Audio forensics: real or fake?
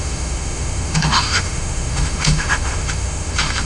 fake